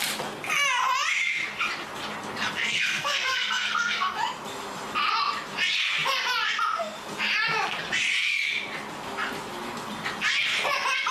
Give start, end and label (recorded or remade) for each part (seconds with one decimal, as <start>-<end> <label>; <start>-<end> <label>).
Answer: 0.0-2.6 recorded; 2.6-4.2 remade; 4.2-11.1 recorded